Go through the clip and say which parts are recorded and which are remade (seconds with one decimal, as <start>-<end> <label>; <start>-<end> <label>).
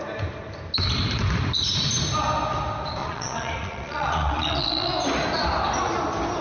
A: 0.0-3.0 recorded; 3.0-4.9 remade; 4.9-6.4 recorded